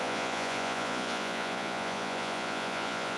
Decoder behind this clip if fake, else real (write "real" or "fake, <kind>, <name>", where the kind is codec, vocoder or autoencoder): fake, vocoder, Vocos